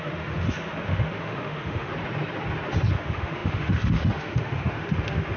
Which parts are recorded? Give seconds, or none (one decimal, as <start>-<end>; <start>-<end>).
1.9-2.9